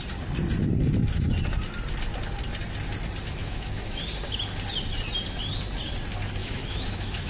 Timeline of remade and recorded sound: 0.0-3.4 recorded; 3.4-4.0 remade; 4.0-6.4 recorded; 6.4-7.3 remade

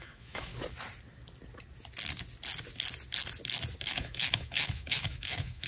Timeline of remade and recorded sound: 0.0-0.5 remade; 0.5-3.9 recorded; 3.9-5.7 remade

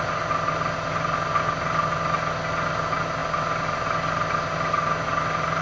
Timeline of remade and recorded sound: 0.0-5.6 recorded

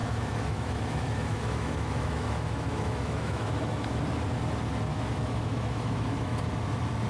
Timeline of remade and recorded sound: 0.0-4.0 remade; 4.0-4.9 recorded; 4.9-6.4 remade; 6.4-7.1 recorded

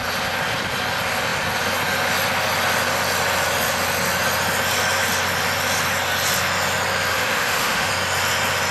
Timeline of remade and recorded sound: 0.0-7.1 recorded; 7.1-7.9 remade; 7.9-8.7 recorded

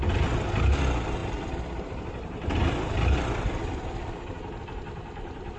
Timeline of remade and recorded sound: 0.0-5.6 recorded